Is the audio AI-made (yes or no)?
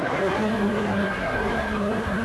yes